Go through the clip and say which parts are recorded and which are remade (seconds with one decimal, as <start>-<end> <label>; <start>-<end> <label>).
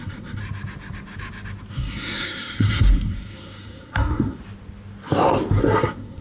0.0-0.4 remade; 0.4-1.7 recorded; 1.7-4.4 remade; 4.4-5.6 recorded; 5.6-6.2 remade